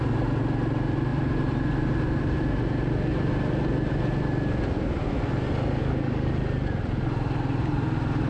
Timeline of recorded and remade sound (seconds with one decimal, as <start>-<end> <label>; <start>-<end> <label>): 0.0-5.8 recorded; 5.8-6.3 remade; 6.3-8.3 recorded